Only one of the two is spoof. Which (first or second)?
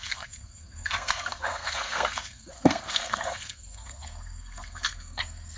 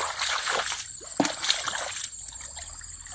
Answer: first